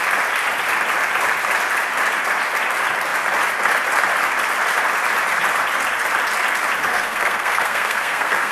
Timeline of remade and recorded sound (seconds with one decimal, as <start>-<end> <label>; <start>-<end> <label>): 0.0-6.9 recorded; 6.9-8.5 remade